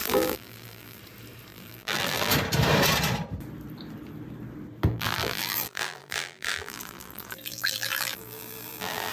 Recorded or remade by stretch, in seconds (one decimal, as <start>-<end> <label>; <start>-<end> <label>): 0.0-1.0 remade; 1.0-1.5 recorded; 1.5-2.3 remade; 2.3-4.9 recorded; 4.9-9.1 remade